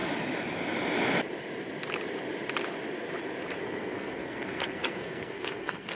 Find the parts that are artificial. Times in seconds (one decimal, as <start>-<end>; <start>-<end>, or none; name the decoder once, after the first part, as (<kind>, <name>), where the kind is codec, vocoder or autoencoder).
3.6-6.0 (codec, SNAC)